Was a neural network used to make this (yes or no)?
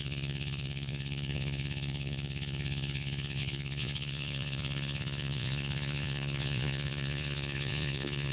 yes